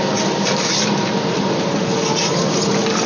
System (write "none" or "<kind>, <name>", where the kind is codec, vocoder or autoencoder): none